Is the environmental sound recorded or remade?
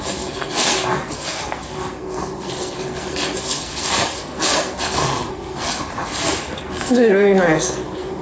remade